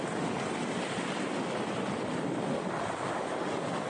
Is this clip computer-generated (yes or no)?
no